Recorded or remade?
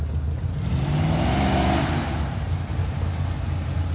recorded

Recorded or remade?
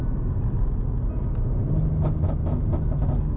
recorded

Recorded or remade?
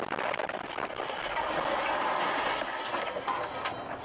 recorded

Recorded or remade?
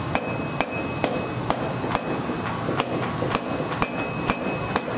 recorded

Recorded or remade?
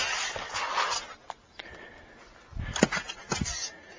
recorded